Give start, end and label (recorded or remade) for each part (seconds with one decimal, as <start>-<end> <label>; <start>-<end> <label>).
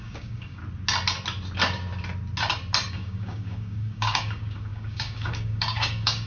0.0-0.6 remade; 0.6-2.9 recorded; 2.9-6.3 remade